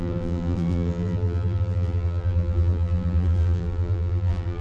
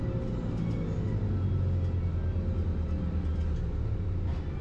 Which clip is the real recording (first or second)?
second